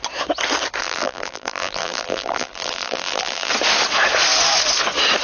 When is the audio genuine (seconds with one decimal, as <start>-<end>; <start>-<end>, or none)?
0.0-0.8; 3.5-5.2